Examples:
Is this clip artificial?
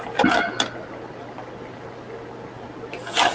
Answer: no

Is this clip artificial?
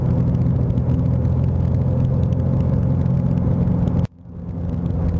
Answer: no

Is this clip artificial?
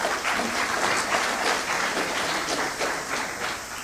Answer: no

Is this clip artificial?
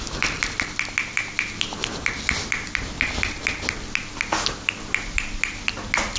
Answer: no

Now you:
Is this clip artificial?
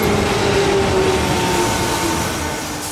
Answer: no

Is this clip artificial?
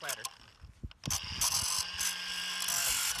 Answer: no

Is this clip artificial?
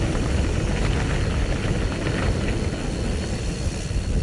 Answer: no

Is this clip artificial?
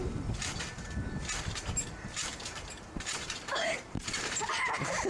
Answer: yes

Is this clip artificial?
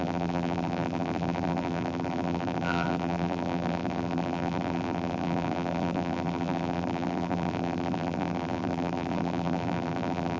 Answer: yes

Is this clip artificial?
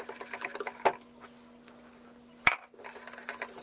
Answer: no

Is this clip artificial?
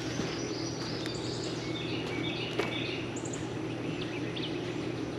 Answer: no